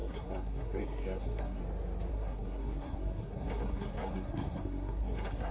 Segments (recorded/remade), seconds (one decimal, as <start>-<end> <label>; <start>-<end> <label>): 0.0-1.6 remade; 1.6-2.1 recorded; 2.1-5.5 remade